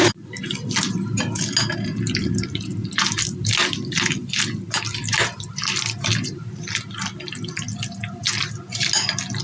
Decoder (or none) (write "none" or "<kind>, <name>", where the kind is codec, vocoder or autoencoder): none